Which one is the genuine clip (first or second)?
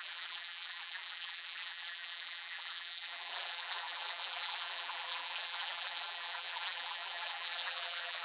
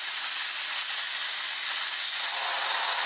second